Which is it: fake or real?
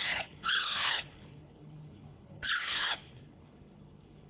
fake